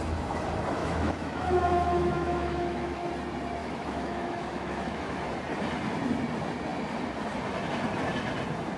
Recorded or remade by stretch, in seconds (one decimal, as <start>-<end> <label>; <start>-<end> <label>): 0.0-0.8 recorded; 0.8-3.1 remade; 3.1-3.6 recorded; 3.6-5.3 remade; 5.3-8.8 recorded